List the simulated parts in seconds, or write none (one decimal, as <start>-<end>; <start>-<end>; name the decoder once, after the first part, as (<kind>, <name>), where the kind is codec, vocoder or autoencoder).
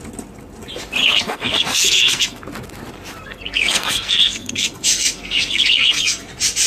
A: 1.0-2.4 (codec, SNAC); 3.2-6.3